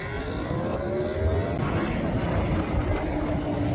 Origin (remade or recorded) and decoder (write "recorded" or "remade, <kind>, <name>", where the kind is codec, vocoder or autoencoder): recorded